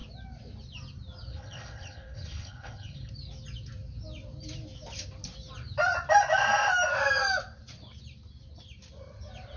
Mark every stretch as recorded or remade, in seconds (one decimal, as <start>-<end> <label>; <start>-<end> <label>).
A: 0.0-1.3 recorded; 1.3-3.1 remade; 3.1-9.6 recorded